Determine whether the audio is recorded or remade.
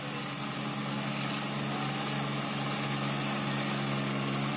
recorded